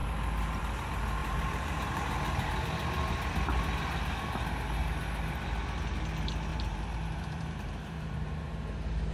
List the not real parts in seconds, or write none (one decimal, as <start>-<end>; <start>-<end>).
1.2-2.5; 6.5-8.4